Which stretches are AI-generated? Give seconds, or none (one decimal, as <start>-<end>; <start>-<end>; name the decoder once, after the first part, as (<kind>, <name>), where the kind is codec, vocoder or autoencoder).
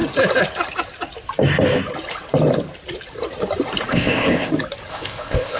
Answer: 3.9-4.5 (codec, ZipCodec); 4.9-5.6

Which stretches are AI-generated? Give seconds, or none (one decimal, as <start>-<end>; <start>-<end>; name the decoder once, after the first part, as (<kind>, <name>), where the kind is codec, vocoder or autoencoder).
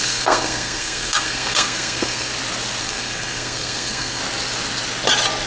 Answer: 0.0-2.3 (codec, SNAC); 2.8-4.2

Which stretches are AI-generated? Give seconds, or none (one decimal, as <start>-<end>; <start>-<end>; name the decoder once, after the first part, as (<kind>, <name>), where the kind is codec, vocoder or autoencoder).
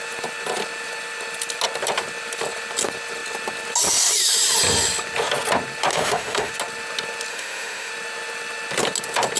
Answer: 5.9-6.5 (autoencoder, DAC-VAE); 7.3-7.9